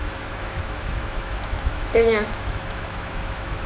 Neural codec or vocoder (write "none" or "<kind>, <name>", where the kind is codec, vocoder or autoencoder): autoencoder, DAC-VAE